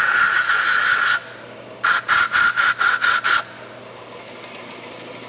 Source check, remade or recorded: recorded